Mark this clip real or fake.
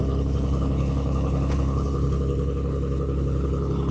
fake